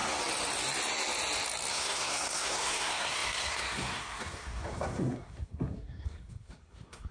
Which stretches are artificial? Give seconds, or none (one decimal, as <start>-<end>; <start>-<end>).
1.7-7.1